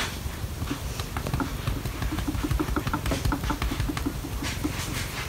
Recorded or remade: remade